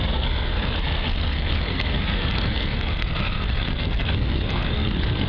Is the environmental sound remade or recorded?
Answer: remade